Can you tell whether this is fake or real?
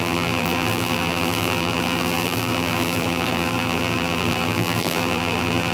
fake